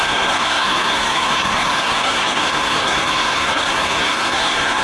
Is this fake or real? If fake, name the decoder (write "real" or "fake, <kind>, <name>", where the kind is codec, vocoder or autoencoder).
fake, codec, SNAC